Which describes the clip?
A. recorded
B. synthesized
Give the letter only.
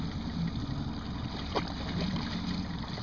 A